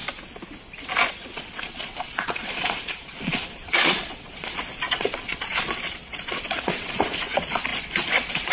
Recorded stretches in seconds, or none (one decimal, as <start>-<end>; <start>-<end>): 0.0-1.1

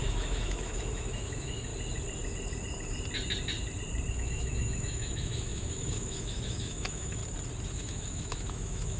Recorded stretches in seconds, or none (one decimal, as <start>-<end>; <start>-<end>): 1.7-4.1; 7.2-7.7

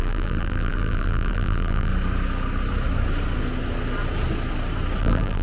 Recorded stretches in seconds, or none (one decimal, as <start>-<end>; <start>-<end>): 1.9-5.0